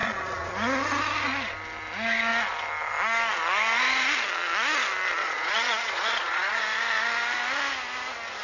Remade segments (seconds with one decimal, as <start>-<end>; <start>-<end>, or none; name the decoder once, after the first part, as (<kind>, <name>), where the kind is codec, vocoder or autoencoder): 0.0-0.5 (vocoder, Vocos); 5.2-6.6

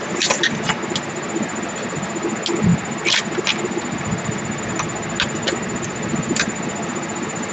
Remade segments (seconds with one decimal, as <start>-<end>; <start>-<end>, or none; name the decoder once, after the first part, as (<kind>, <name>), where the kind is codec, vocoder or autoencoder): none